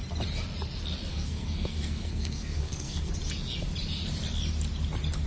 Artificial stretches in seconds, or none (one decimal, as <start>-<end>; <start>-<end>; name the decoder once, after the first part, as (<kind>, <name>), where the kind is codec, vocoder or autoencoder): 1.1-3.1 (codec, SNAC)